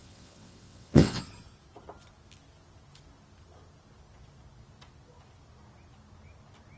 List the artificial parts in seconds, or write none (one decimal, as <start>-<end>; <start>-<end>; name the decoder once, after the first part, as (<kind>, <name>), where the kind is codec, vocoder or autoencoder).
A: 0.0-1.2 (vocoder, WaveNeXt)